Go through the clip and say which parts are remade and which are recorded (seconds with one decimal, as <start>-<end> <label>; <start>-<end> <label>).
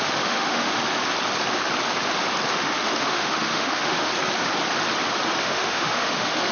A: 0.0-0.8 remade; 0.8-2.5 recorded; 2.5-4.1 remade; 4.1-5.4 recorded; 5.4-6.5 remade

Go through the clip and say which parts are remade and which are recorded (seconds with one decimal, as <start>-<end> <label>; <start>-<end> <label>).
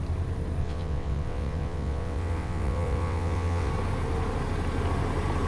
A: 0.0-0.6 recorded; 0.6-3.7 remade; 3.7-5.5 recorded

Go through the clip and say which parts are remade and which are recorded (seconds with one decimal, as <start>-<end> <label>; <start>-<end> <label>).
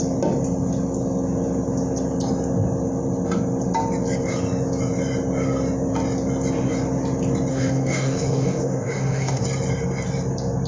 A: 0.0-7.5 recorded; 7.5-9.4 remade; 9.4-10.7 recorded